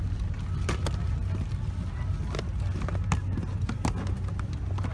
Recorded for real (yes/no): yes